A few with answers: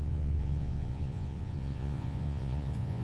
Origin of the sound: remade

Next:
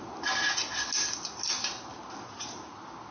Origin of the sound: recorded